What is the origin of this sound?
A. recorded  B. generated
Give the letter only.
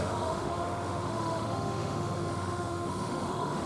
B